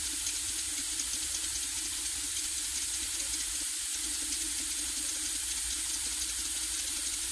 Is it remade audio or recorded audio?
recorded